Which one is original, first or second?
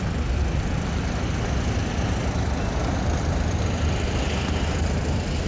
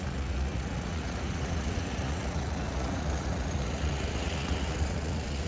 first